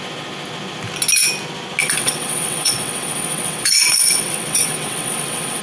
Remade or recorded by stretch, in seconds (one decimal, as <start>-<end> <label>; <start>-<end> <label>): 0.0-1.8 recorded; 1.8-5.6 remade